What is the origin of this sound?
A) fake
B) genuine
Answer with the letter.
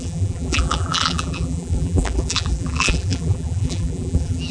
A